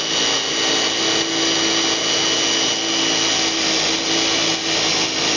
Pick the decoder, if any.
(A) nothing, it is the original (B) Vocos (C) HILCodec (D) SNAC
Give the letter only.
A